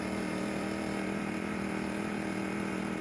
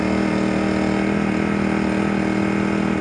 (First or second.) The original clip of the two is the second